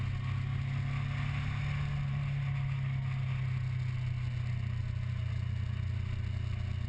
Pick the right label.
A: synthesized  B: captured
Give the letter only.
B